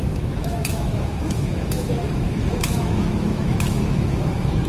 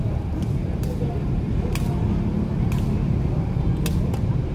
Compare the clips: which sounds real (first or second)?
second